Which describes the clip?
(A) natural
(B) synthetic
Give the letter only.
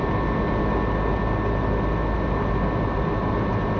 A